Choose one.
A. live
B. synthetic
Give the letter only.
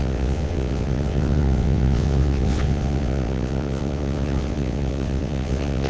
B